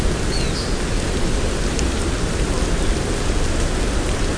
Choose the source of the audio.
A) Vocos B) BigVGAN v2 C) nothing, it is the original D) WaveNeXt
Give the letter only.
C